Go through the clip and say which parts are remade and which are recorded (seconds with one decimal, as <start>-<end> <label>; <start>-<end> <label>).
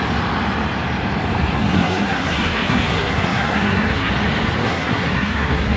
0.0-1.5 recorded; 1.5-4.1 remade; 4.1-4.6 recorded; 4.6-5.8 remade